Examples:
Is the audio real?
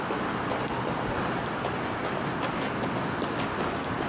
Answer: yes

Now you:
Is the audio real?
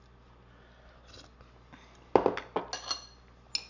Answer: yes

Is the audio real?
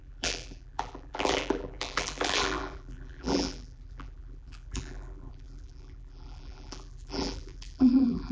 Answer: no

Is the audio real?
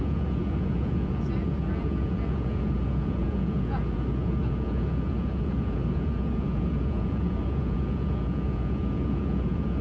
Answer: no